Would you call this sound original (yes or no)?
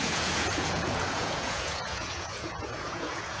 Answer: no